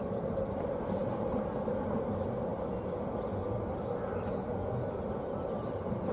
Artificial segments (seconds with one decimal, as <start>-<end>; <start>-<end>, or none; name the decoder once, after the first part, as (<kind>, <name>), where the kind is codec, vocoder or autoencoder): none